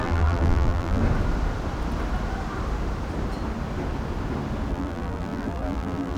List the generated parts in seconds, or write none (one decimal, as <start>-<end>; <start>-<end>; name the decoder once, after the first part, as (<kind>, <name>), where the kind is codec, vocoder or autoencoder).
0.0-1.0 (vocoder, BigVGAN v2); 4.7-6.2